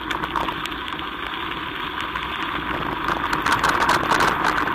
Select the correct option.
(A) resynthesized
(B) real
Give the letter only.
B